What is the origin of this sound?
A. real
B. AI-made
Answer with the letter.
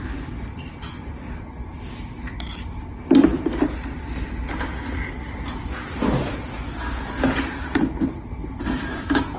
A